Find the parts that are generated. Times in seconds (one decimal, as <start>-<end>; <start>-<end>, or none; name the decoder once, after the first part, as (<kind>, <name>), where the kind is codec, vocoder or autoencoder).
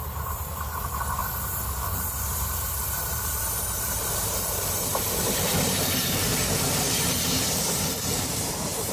0.0-1.2 (vocoder, BigVGAN v2); 1.9-8.9